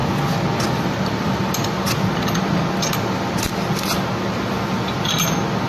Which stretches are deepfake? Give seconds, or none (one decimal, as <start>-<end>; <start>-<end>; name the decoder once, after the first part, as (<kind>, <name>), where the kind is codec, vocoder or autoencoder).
none